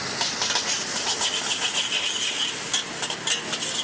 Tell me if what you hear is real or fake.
real